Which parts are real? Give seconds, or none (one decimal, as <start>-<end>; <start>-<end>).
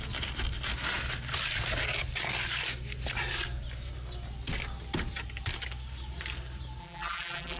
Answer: 0.0-6.8